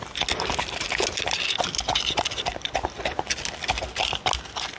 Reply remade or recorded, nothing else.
recorded